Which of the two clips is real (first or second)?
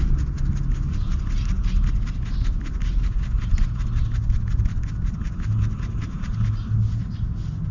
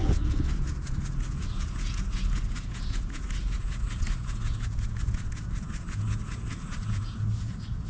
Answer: first